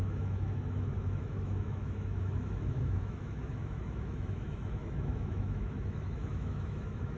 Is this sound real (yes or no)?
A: no